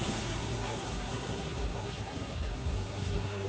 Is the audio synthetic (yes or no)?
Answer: yes